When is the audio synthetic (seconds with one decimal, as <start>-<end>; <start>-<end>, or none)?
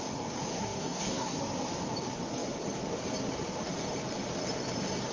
0.5-1.4